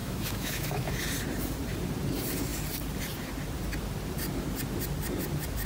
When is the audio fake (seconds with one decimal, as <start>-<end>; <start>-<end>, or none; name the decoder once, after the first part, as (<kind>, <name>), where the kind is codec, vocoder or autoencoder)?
0.0-0.9 (autoencoder, DAC-VAE)